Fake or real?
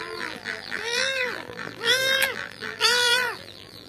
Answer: fake